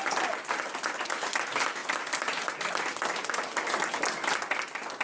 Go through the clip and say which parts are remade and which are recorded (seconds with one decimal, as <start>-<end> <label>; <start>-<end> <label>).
0.0-5.0 recorded